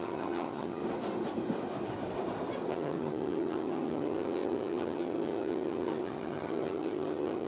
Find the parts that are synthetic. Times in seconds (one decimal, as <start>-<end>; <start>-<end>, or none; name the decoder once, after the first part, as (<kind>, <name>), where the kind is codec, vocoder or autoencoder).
0.0-0.8 (vocoder, HiFi-GAN); 2.7-7.5

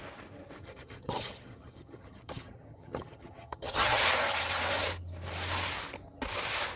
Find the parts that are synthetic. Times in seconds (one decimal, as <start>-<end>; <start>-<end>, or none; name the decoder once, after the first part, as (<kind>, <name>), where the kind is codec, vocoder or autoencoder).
0.6-4.0 (vocoder, HiFi-GAN)

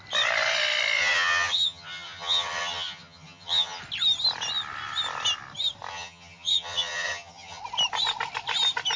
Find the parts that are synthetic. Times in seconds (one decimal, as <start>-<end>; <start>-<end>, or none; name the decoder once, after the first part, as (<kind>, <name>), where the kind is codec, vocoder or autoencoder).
1.0-3.8 (vocoder, HiFi-GAN); 5.9-7.6